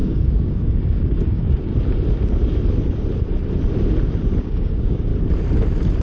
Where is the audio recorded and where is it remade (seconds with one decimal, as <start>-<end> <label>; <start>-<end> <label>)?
0.0-1.7 remade; 1.7-4.4 recorded; 4.4-5.1 remade; 5.1-6.0 recorded